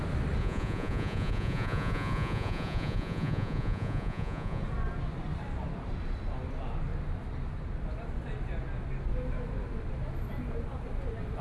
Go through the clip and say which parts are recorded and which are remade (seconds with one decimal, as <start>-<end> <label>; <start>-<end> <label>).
0.0-0.4 recorded; 0.4-4.6 remade; 4.6-11.4 recorded